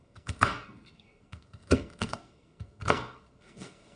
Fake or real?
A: fake